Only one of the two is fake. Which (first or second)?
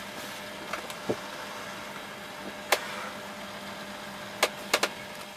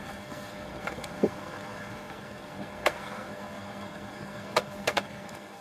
second